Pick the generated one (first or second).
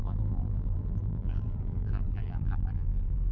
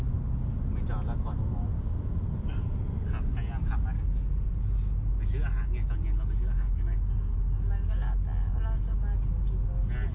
first